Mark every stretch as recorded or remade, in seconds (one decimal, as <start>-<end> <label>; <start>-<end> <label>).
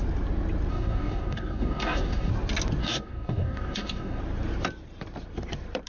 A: 0.0-0.7 recorded; 0.7-2.3 remade; 2.3-2.8 recorded; 2.8-4.2 remade; 4.2-5.9 recorded